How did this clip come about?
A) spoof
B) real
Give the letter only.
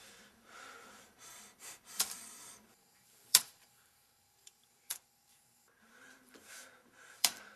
A